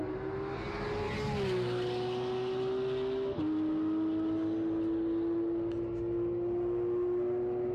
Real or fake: real